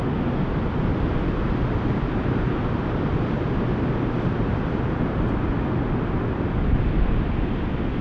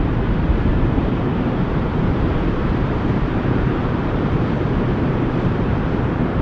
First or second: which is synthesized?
second